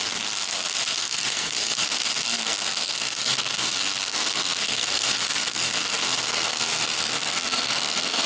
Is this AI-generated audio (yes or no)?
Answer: yes